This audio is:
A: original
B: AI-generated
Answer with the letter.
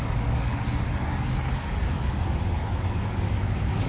B